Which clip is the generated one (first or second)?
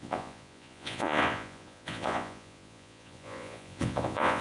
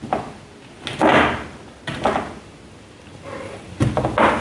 first